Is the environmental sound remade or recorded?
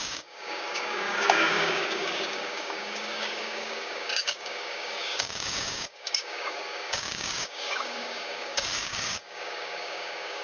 remade